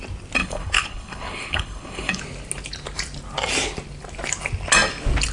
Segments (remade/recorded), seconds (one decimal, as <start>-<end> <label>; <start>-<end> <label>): 0.0-0.4 recorded; 0.4-2.2 remade; 2.2-5.3 recorded

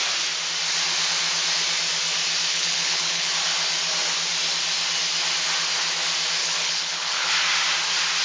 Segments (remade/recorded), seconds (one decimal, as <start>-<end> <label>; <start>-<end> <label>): 0.0-2.5 recorded; 2.5-3.3 remade; 3.3-6.4 recorded; 6.4-7.3 remade; 7.3-8.2 recorded

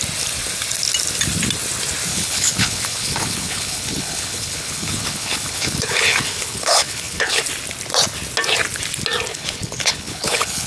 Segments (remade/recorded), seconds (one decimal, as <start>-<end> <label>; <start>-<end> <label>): 0.0-2.1 recorded; 2.1-7.4 remade; 7.4-9.3 recorded; 9.3-10.7 remade

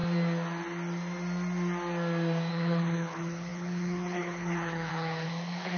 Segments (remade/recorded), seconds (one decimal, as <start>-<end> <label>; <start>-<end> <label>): 0.0-2.5 recorded; 2.5-5.8 remade